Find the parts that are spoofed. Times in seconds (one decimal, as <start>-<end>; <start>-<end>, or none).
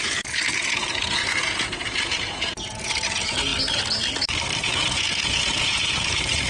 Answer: 0.0-3.5; 4.6-6.5